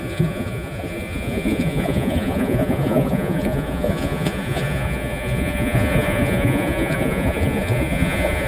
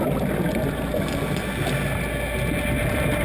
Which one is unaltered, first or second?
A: second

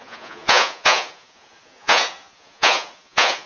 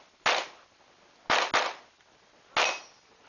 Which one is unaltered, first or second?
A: second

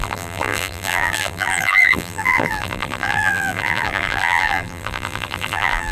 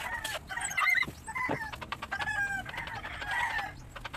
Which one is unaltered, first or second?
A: second